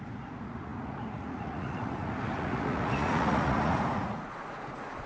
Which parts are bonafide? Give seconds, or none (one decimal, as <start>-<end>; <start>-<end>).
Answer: none